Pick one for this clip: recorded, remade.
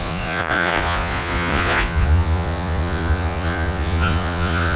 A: remade